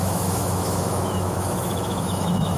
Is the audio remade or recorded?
remade